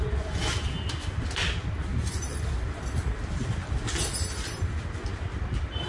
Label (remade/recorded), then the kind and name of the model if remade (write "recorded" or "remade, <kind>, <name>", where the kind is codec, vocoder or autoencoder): recorded